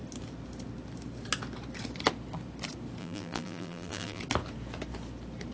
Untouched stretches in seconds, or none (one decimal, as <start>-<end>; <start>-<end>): 0.0-3.0; 4.2-5.5